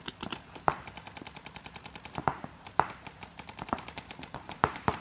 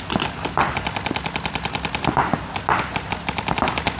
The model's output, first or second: first